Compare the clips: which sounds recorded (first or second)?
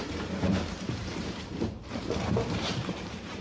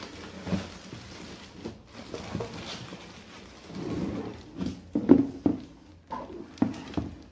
second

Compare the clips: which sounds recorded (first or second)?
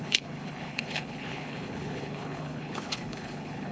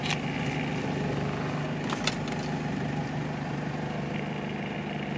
second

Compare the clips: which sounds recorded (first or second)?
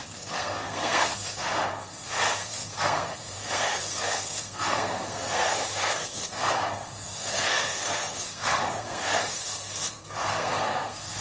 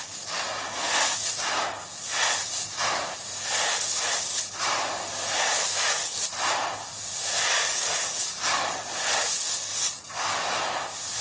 second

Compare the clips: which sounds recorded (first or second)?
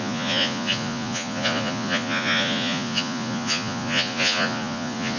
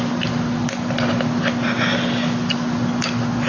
second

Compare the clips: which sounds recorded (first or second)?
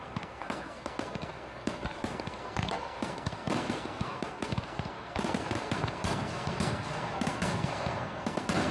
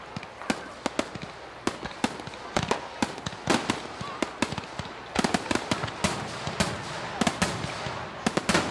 second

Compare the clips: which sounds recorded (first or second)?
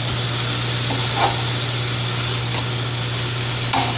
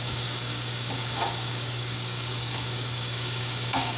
first